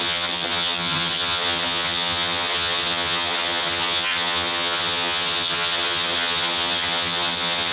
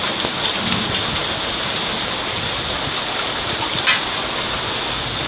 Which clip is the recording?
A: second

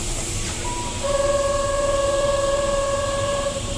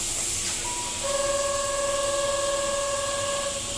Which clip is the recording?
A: second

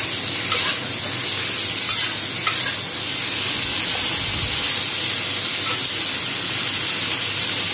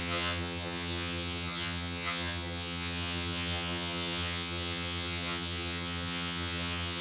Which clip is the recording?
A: first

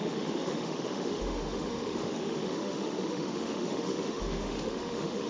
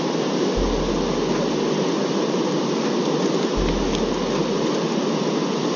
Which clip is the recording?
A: second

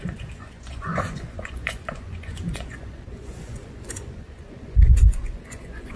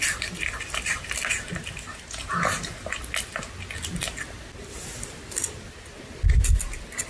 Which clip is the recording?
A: second